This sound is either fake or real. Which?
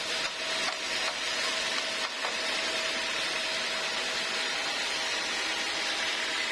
real